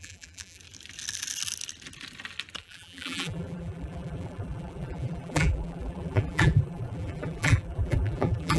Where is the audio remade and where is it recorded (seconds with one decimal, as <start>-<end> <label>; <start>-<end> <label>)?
0.0-0.6 remade; 0.6-2.6 recorded; 2.6-8.6 remade